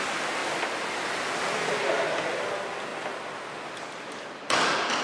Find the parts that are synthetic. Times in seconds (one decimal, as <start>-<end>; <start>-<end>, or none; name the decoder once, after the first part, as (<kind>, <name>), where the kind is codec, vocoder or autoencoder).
none